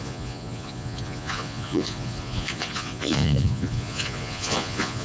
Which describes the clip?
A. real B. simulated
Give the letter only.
B